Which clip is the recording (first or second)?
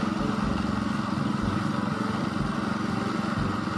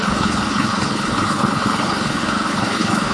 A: first